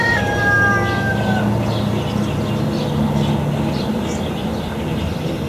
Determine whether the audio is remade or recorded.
recorded